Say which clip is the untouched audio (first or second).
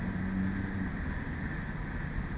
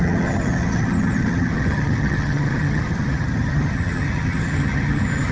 first